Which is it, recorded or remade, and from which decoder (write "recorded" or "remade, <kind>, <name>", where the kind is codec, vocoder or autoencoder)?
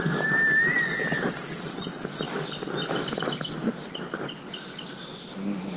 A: recorded